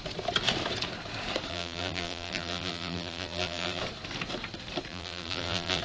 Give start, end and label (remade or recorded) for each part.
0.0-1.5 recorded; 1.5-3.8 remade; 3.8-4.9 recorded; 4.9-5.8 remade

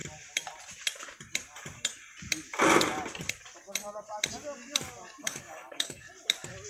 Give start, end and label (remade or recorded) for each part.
0.0-5.2 recorded; 5.2-6.1 remade; 6.1-6.7 recorded

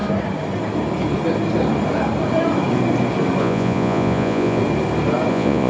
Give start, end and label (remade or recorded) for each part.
0.0-3.4 recorded; 3.4-4.6 remade; 4.6-5.3 recorded; 5.3-5.7 remade